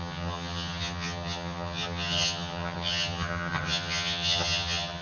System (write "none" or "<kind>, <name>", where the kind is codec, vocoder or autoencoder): vocoder, HiFi-GAN